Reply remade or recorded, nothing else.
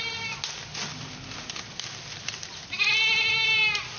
recorded